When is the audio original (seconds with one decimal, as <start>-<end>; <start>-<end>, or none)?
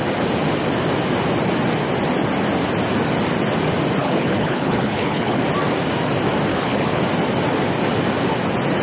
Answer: 0.0-4.0; 5.4-6.5; 7.0-8.8